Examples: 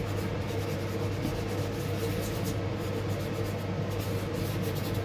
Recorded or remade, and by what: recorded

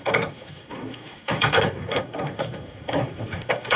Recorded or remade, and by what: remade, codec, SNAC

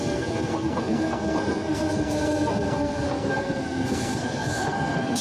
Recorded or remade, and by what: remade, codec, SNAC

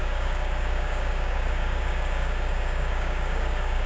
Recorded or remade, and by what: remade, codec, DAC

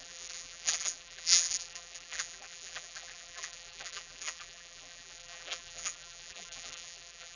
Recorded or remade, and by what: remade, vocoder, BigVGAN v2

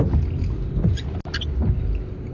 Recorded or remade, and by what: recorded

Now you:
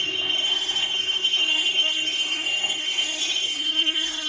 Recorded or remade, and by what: remade, codec, SNAC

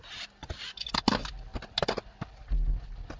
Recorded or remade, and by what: recorded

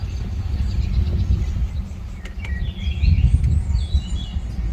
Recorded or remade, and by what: recorded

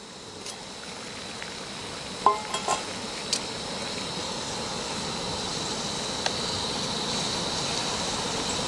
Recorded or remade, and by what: recorded